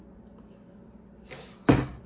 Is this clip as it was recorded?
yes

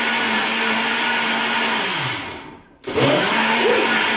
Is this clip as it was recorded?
yes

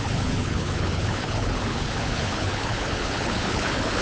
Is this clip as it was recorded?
no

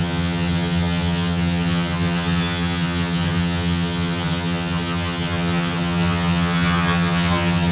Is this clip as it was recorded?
no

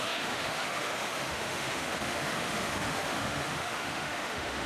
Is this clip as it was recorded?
no